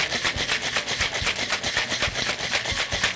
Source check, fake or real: real